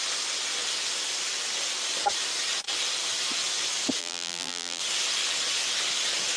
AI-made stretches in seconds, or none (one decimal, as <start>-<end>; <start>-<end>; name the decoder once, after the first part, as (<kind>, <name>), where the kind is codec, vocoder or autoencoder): 4.0-4.8 (vocoder, BigVGAN v2)